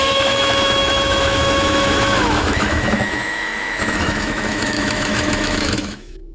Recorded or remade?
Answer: remade